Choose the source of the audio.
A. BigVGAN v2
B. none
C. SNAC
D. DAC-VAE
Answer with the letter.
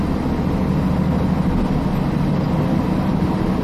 B